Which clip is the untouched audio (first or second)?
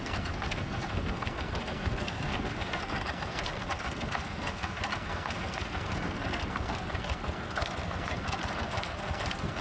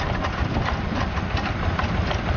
second